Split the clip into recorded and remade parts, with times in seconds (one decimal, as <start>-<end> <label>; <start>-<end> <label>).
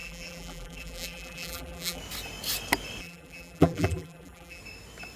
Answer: 0.0-2.0 remade; 2.0-3.0 recorded; 3.0-4.6 remade; 4.6-5.2 recorded